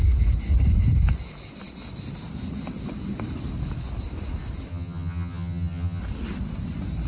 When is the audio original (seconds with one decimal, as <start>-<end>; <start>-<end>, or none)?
0.0-4.7; 6.0-7.1

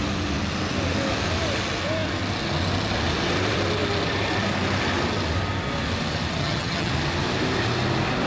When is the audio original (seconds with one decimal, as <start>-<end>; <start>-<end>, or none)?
0.0-6.4; 6.9-8.3

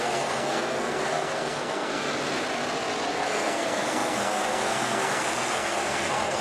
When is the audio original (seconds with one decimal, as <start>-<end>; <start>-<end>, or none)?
2.1-3.1

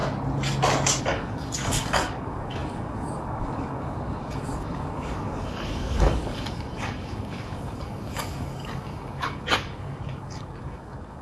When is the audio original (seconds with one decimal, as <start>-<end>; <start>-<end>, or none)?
0.0-1.0

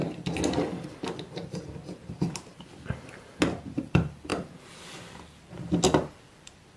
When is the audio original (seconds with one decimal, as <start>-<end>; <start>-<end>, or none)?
0.0-3.8

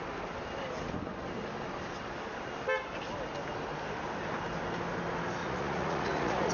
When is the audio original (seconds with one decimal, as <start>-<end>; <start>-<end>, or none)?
0.0-5.4

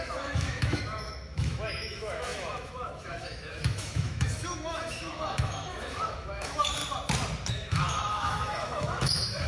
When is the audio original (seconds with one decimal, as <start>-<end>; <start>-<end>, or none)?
6.8-7.5